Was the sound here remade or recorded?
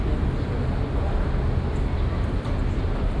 recorded